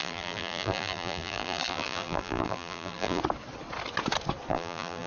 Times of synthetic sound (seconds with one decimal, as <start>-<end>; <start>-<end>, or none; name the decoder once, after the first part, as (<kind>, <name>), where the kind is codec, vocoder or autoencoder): 0.0-3.2 (vocoder, BigVGAN v2); 4.5-5.1